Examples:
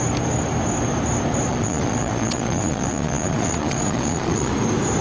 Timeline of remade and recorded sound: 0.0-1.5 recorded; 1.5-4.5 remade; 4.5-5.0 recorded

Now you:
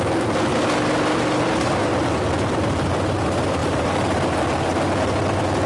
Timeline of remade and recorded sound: 0.0-0.5 remade; 0.5-1.2 recorded; 1.2-3.6 remade; 3.6-5.7 recorded